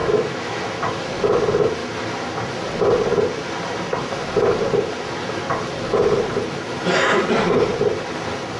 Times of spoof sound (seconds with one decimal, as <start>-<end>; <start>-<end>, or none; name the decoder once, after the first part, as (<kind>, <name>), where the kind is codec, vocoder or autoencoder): 0.0-1.1 (autoencoder, DAC-VAE)